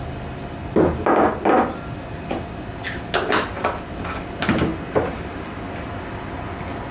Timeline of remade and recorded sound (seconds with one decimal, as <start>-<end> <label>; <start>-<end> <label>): 0.0-6.9 recorded